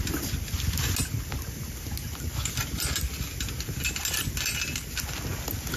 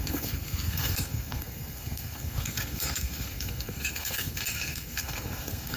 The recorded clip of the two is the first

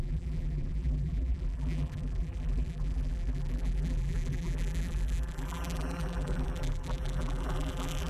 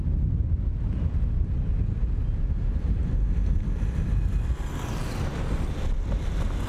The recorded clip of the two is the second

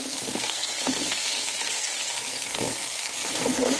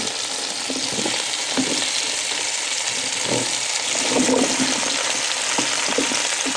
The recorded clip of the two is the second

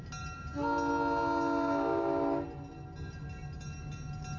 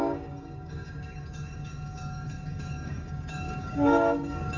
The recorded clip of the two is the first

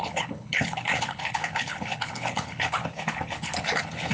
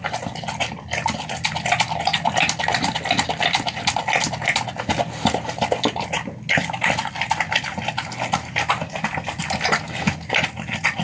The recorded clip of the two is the second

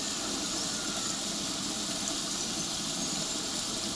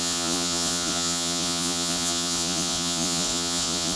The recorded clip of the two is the first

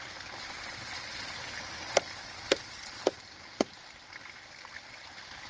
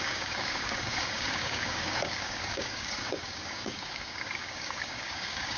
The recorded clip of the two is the first